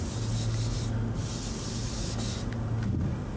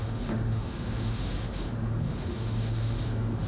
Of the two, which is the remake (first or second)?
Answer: second